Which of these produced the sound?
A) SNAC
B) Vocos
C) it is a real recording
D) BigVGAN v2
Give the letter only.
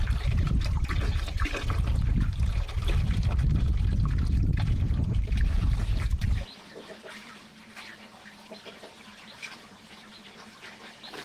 D